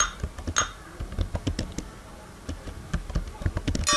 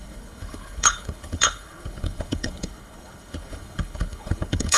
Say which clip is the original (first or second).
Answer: first